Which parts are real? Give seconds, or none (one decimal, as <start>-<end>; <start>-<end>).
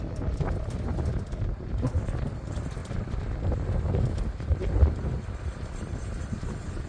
1.5-2.0; 2.8-4.1; 5.0-5.8